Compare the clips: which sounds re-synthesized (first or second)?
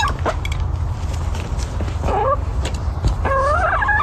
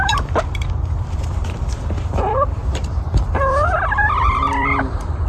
second